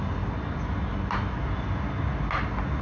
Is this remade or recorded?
recorded